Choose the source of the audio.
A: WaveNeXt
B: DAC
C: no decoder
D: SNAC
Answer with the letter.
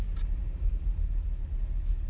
C